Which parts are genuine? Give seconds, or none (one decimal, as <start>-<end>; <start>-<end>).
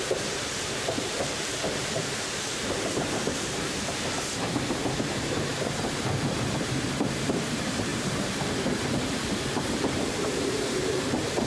none